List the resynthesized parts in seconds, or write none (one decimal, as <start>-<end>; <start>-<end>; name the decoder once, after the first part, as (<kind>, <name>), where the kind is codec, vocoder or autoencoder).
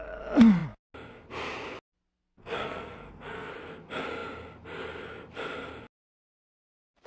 2.4-3.5 (codec, SNAC)